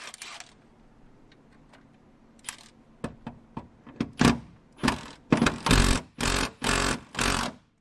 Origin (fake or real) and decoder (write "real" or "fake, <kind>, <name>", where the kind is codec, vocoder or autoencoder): real